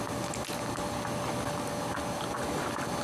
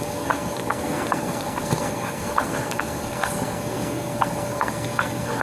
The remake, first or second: second